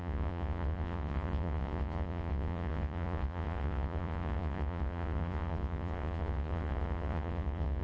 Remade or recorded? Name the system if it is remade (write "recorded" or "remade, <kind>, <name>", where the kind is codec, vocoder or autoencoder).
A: remade, vocoder, Vocos